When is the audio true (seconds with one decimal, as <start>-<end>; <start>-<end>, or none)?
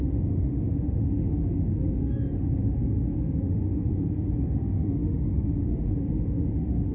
none